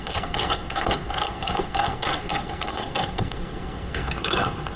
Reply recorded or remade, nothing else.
remade